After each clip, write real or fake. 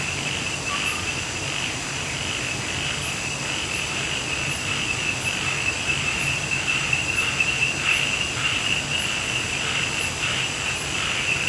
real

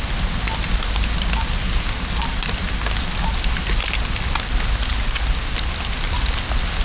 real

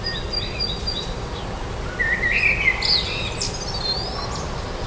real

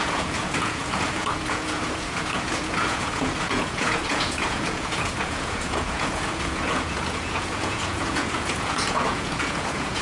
fake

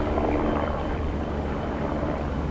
fake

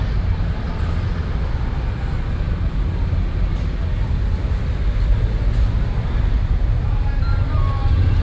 real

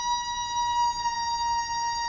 real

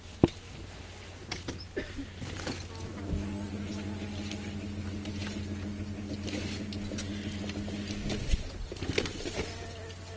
real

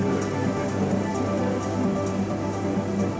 real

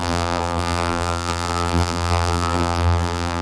fake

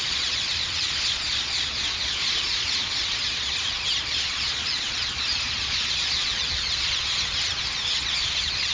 fake